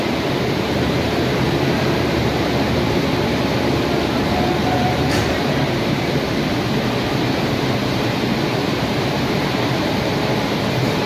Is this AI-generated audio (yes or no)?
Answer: yes